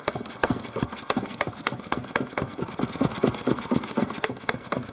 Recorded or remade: remade